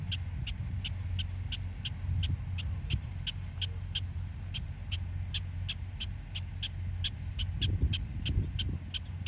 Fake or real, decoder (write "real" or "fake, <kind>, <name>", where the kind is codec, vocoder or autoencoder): real